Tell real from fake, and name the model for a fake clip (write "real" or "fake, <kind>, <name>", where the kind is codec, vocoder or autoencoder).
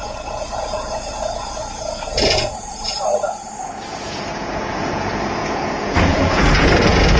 fake, vocoder, Vocos